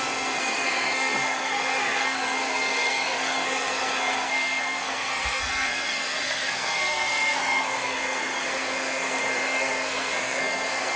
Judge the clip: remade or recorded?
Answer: remade